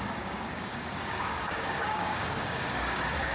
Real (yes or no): no